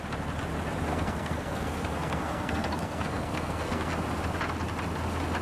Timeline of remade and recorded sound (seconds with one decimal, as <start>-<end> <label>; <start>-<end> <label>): 0.0-0.9 recorded; 0.9-3.9 remade; 3.9-5.4 recorded